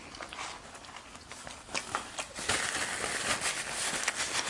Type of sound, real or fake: real